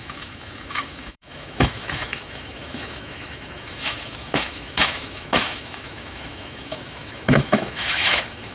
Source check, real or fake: fake